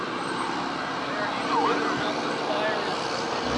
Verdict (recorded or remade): recorded